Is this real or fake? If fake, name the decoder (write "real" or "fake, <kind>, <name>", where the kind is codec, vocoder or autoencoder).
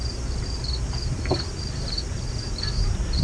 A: real